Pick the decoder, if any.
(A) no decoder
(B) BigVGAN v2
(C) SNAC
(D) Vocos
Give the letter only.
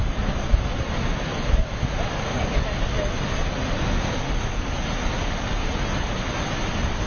A